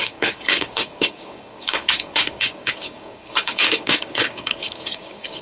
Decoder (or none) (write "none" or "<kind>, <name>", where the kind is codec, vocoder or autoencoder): codec, DAC